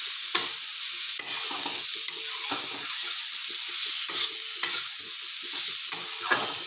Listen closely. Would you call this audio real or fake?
real